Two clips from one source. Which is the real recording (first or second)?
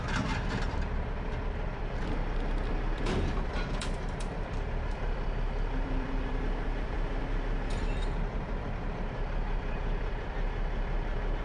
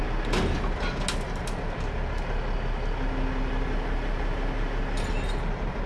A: second